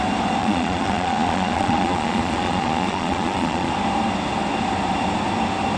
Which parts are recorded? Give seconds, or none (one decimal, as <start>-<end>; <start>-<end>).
0.0-0.4; 3.7-5.8